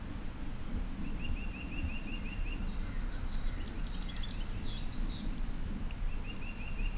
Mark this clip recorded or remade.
recorded